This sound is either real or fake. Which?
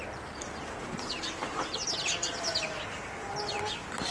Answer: real